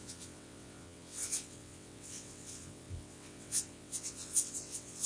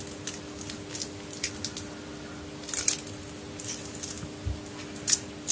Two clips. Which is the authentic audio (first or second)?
second